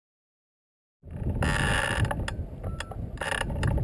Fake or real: real